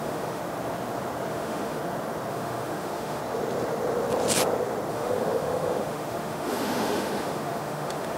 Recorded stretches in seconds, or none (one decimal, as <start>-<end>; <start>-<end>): 0.4-1.3; 1.8-2.3; 3.2-4.9